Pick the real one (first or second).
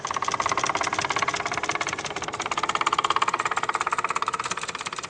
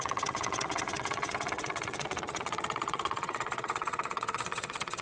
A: first